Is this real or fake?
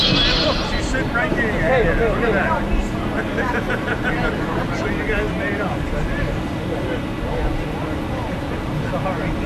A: real